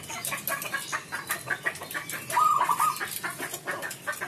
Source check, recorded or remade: recorded